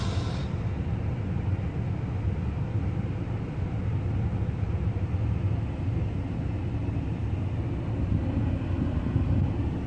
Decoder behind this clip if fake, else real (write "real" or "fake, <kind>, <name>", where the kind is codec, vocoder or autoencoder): real